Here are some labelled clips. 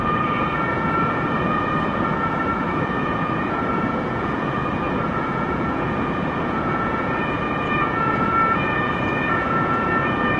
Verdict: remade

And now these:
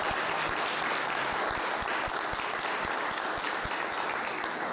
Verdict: recorded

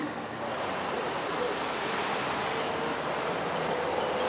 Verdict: recorded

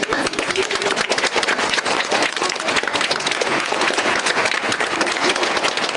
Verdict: remade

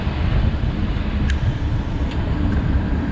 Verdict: remade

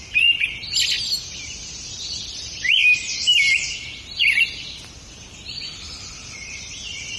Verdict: recorded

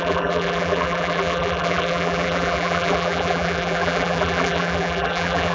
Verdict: remade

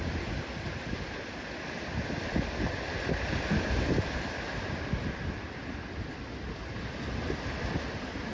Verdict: recorded